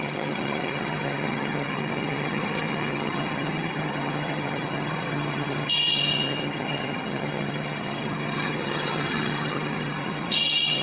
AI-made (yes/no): yes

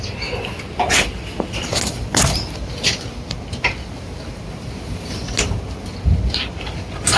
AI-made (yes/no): no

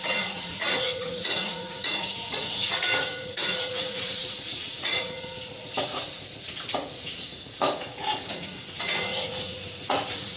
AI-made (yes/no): yes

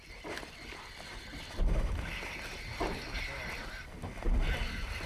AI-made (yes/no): no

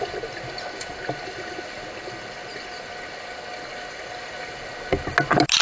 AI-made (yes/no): no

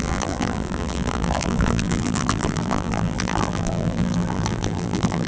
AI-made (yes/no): yes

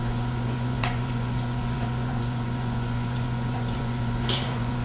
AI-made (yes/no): yes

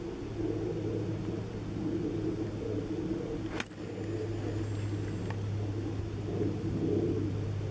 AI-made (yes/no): no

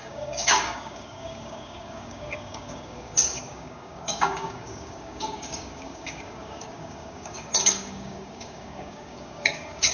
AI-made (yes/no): yes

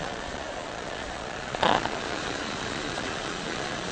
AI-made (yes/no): yes